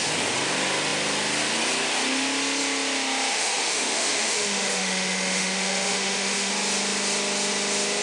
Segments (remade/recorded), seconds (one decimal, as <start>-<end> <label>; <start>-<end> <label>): 0.0-3.3 recorded; 3.3-6.5 remade; 6.5-8.0 recorded